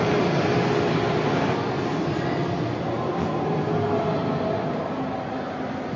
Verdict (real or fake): real